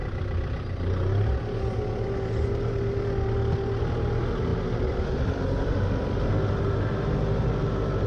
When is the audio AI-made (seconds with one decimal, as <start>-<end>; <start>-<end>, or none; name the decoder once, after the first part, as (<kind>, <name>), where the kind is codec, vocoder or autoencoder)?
0.0-1.1 (vocoder, BigVGAN v2); 4.5-6.3